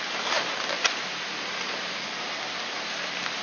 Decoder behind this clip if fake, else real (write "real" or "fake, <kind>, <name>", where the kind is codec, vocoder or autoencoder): real